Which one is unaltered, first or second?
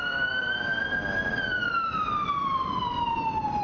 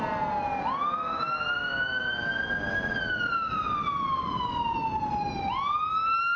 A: second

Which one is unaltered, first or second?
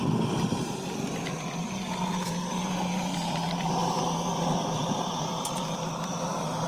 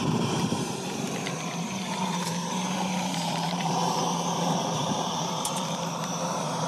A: first